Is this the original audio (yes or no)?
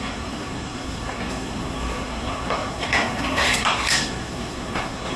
no